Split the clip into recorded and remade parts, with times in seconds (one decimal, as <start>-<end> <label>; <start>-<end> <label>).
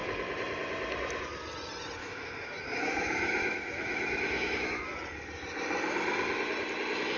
0.0-2.0 recorded; 2.0-4.8 remade; 4.8-7.2 recorded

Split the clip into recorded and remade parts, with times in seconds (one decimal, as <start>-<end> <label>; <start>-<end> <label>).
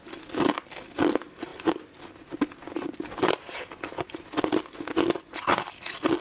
0.0-6.2 recorded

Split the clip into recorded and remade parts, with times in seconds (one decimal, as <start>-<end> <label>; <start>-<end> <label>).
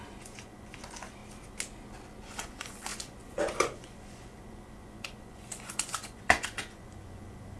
0.0-1.2 remade; 1.2-2.2 recorded; 2.2-7.6 remade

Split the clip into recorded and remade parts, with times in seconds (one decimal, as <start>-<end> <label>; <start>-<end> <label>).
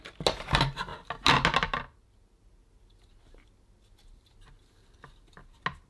0.0-5.9 recorded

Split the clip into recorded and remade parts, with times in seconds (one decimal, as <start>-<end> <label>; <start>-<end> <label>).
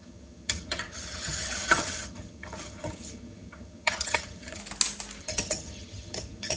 0.0-4.6 remade; 4.6-5.2 recorded; 5.2-6.6 remade